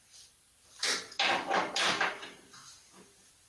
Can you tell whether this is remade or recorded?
recorded